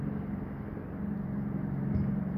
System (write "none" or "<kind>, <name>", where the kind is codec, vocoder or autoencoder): none